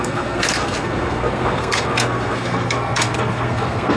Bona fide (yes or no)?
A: no